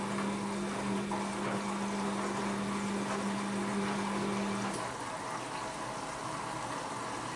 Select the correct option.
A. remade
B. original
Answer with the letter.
B